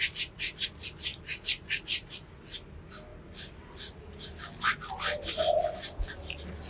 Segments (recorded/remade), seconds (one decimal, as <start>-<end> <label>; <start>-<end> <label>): 0.0-6.7 recorded